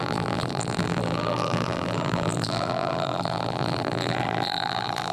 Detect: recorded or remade remade